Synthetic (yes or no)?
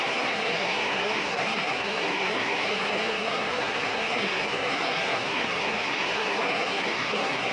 yes